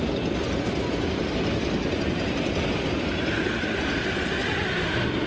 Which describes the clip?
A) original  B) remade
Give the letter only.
A